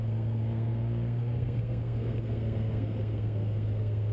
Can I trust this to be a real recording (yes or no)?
no